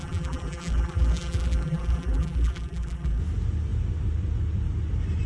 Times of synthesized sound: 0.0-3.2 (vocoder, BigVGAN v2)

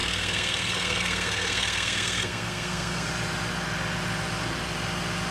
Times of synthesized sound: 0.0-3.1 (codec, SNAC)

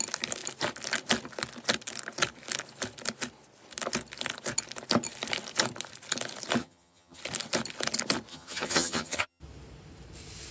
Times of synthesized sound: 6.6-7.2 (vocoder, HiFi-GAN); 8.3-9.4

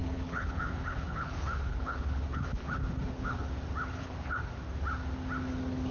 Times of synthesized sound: 0.0-3.5 (codec, HILCodec); 4.0-4.5

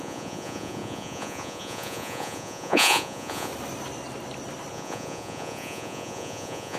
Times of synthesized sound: 0.0-3.5 (vocoder, Vocos); 4.7-6.8